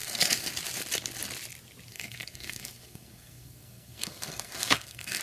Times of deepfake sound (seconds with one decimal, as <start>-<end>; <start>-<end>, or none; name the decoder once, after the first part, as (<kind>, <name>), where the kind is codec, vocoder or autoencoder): 0.0-0.5 (codec, SNAC); 1.9-5.2

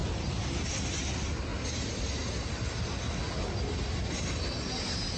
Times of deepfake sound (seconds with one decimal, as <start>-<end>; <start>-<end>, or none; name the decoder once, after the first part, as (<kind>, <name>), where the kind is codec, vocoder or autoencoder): none